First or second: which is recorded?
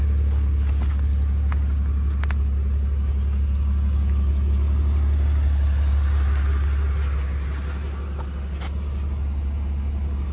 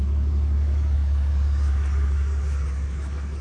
first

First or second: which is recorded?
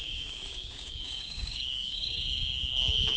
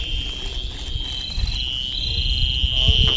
second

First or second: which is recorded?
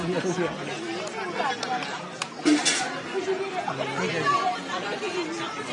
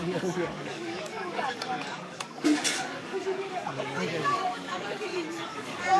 first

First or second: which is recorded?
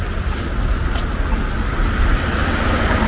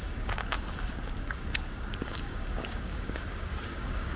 first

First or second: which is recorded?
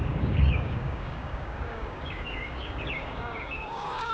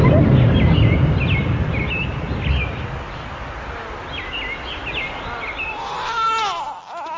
second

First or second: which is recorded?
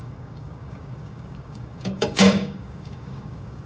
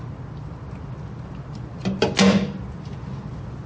second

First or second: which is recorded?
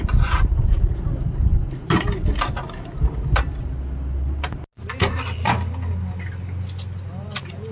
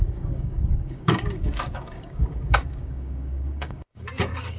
first